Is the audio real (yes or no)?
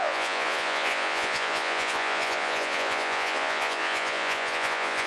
no